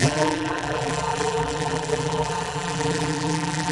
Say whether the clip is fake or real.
fake